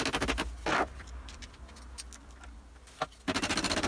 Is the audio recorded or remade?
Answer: recorded